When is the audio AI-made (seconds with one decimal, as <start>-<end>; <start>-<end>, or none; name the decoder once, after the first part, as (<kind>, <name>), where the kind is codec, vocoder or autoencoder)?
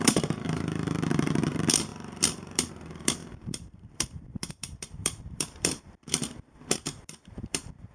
0.0-7.9 (vocoder, BigVGAN v2)